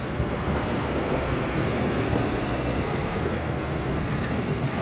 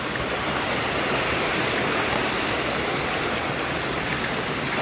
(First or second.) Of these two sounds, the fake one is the first